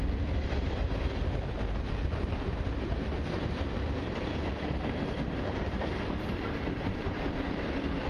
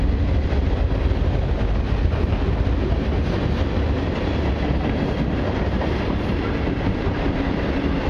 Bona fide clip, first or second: second